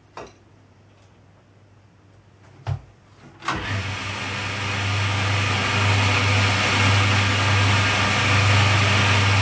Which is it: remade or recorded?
recorded